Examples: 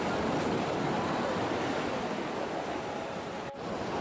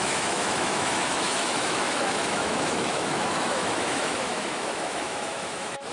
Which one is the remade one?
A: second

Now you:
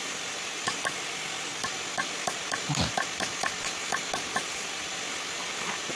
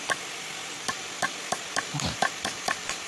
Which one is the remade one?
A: second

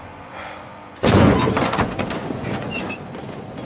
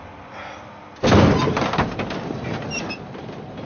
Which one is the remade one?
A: first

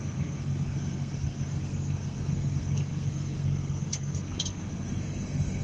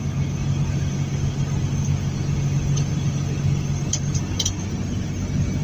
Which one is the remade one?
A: first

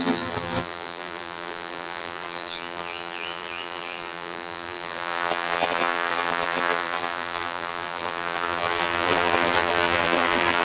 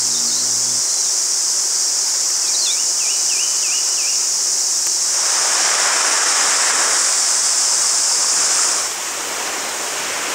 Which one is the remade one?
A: first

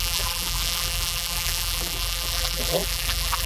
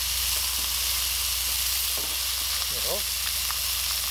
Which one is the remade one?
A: first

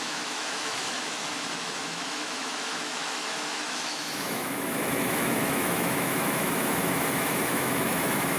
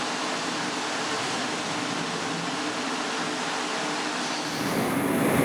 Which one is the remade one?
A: first